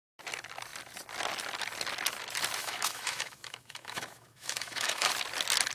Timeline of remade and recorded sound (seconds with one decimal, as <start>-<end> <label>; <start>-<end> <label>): 0.0-2.6 recorded; 2.6-5.1 remade; 5.1-5.7 recorded